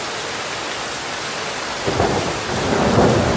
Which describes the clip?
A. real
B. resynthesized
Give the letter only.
A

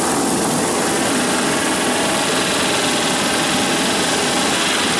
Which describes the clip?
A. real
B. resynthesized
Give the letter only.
A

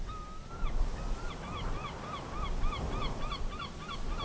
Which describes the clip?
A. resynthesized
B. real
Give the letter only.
B